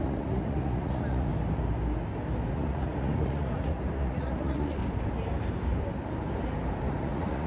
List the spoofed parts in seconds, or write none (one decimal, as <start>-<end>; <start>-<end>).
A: 0.0-1.3; 2.5-4.8; 6.8-7.5